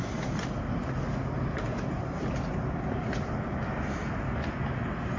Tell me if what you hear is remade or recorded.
recorded